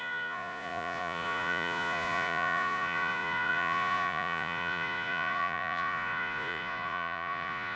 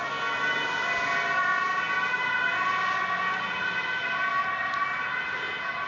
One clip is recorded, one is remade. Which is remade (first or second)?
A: first